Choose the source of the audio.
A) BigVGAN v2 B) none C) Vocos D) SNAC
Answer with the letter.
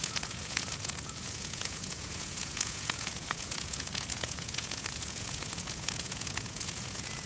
C